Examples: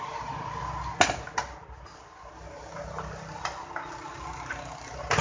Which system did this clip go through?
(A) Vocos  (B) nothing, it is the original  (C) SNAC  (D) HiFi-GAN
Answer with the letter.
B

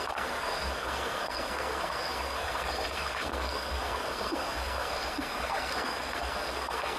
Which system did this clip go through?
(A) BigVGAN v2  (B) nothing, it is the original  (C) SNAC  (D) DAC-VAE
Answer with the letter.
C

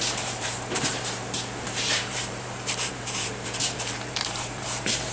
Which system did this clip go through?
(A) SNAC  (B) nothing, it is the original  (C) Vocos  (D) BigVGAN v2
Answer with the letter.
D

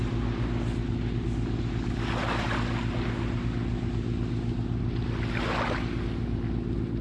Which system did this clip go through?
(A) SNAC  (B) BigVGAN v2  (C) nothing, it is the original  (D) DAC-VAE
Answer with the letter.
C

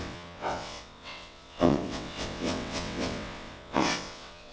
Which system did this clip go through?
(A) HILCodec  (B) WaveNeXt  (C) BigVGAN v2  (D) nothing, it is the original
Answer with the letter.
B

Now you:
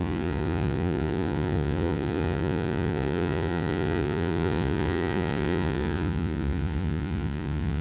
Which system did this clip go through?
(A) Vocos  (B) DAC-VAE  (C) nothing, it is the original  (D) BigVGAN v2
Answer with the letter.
A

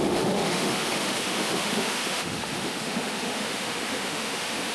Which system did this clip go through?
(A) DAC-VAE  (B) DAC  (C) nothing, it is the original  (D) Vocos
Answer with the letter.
A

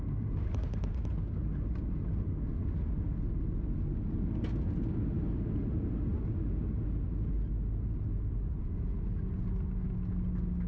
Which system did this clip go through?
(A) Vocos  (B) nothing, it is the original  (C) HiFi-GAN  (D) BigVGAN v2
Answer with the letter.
B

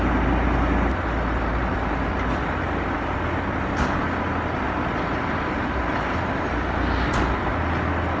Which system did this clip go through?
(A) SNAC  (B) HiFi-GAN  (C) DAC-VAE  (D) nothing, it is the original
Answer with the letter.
D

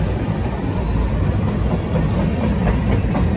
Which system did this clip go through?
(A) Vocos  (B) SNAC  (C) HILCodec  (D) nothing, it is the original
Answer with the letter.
D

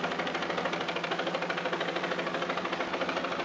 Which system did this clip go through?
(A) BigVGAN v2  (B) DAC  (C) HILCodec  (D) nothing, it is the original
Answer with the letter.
D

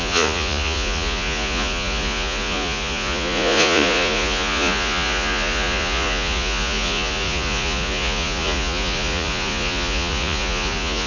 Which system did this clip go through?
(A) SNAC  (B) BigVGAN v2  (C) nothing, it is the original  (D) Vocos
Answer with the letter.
D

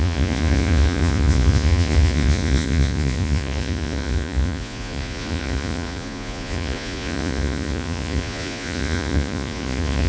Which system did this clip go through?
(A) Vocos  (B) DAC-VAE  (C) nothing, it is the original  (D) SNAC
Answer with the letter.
A